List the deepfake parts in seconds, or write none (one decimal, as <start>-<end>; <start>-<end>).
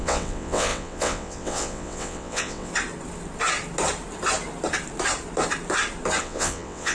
0.0-2.7; 6.2-6.9